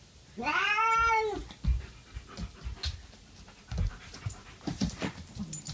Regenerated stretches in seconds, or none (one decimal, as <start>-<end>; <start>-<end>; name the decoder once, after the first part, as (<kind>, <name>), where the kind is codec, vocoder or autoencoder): 0.0-1.4 (vocoder, BigVGAN v2); 3.9-5.7

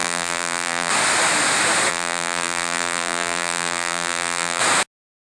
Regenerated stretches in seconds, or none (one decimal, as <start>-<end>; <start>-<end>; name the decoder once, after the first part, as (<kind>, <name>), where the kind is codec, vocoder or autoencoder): 0.0-0.9 (vocoder, BigVGAN v2); 1.9-4.6

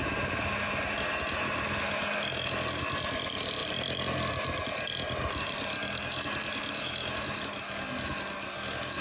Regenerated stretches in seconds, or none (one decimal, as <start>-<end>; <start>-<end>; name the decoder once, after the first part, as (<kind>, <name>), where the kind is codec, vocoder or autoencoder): 0.0-0.6 (vocoder, BigVGAN v2)